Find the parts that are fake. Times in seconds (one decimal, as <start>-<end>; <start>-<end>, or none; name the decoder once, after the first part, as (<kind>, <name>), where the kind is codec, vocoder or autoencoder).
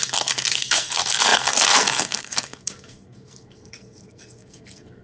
0.0-5.0 (codec, SNAC)